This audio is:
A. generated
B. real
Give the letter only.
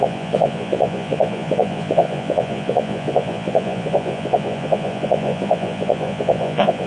A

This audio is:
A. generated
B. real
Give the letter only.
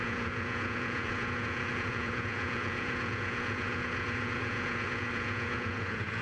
A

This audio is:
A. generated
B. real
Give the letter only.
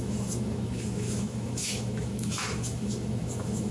A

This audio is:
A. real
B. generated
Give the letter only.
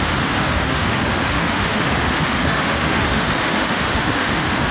B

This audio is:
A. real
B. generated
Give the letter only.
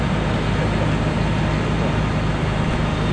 A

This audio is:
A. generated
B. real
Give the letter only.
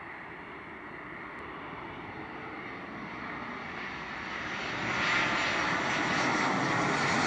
B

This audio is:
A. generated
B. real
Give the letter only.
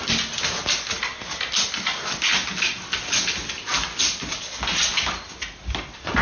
B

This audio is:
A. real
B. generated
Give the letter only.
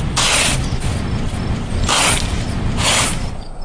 A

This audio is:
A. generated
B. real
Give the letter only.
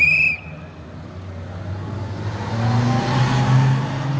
B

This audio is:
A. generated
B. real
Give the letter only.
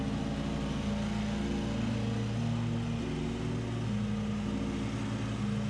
B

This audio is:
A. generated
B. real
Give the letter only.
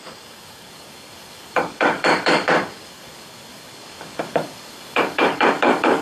A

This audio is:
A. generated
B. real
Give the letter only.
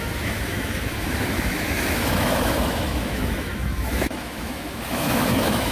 A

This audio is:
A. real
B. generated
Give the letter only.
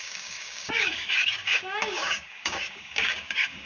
B